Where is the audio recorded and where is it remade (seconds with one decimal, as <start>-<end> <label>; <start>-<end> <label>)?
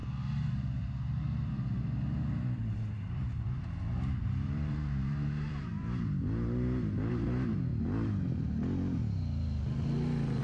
0.0-5.7 remade; 5.7-7.1 recorded; 7.1-7.7 remade; 7.7-10.4 recorded